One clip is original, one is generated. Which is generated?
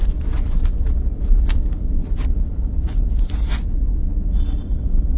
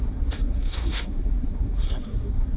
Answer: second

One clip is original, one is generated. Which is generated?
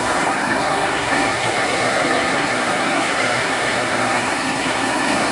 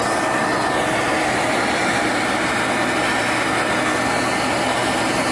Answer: first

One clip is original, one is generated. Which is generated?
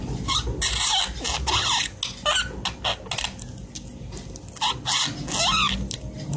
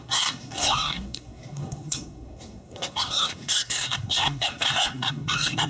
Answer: second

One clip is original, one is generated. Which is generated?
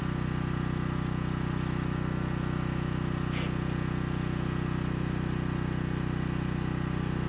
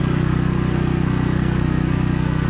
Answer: second